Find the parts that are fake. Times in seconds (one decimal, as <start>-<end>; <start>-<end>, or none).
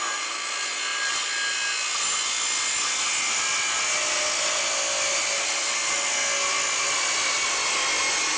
none